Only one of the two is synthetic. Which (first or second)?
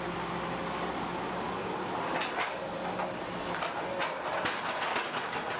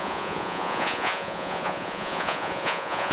second